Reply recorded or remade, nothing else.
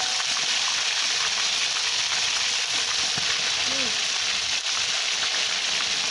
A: recorded